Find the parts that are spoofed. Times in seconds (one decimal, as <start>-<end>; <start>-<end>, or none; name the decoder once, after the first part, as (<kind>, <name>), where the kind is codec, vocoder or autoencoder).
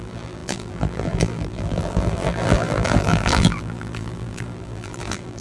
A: 0.0-5.4 (vocoder, BigVGAN v2)